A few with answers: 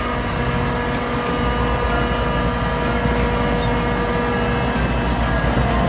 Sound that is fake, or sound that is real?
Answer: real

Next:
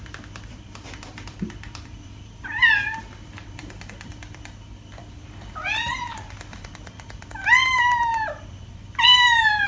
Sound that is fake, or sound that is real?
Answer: fake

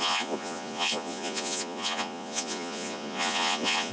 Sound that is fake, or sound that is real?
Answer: fake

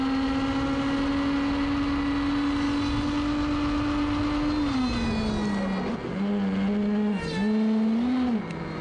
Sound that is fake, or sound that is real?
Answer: real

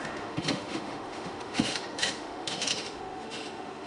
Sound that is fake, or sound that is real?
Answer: fake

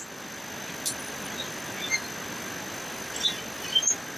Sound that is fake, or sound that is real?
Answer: real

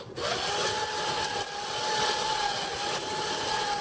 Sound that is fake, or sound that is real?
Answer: real